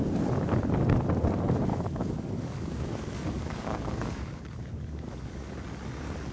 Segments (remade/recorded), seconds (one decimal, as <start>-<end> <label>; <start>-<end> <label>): 0.0-1.7 recorded; 1.7-5.5 remade; 5.5-6.3 recorded